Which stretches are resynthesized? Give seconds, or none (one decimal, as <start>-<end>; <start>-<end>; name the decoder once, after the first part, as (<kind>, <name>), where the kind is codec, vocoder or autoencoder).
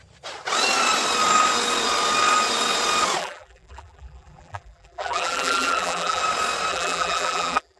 3.2-6.2 (vocoder, BigVGAN v2); 6.7-7.8